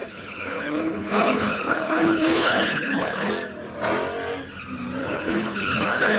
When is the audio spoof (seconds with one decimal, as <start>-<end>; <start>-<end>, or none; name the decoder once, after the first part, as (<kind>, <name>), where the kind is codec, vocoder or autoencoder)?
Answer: 0.0-3.3 (codec, HILCodec); 5.0-6.2